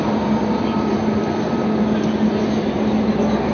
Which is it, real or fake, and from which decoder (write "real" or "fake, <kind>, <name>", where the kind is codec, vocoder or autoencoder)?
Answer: real